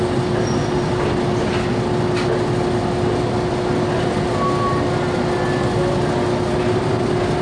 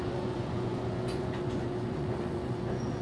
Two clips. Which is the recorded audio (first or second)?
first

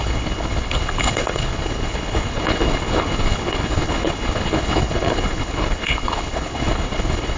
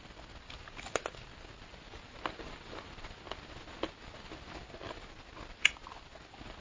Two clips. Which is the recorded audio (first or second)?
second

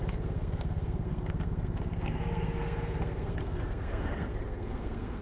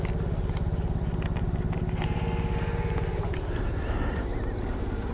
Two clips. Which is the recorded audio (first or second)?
second